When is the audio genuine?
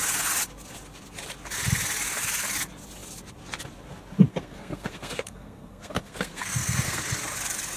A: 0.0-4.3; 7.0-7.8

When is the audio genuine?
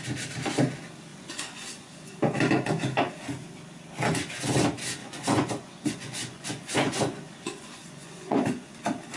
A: 0.0-1.1; 2.1-5.0; 8.7-9.2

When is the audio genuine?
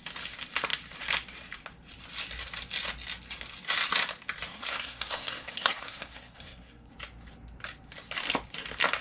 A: 0.0-4.5; 6.9-9.0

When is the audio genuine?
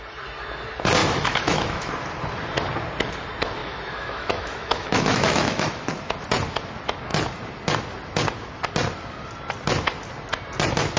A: 0.0-1.0; 1.9-3.6; 5.9-11.0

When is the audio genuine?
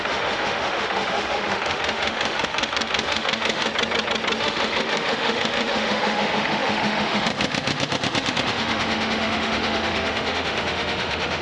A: 3.7-4.4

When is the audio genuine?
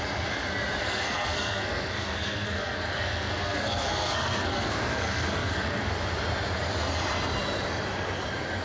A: 0.0-0.8; 5.9-8.6